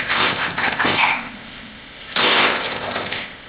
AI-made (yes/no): yes